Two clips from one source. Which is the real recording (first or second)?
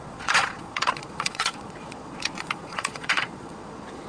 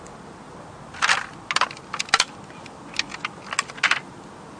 second